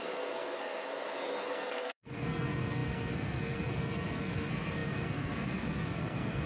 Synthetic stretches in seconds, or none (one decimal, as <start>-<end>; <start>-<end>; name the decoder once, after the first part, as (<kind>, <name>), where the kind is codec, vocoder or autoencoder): 0.0-6.5 (codec, SNAC)